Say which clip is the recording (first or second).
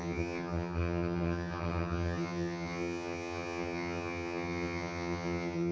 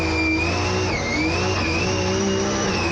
second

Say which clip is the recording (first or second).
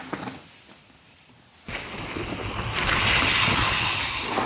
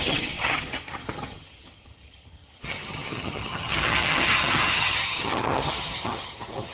first